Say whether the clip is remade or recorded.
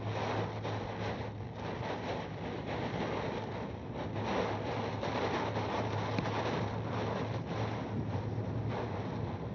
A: recorded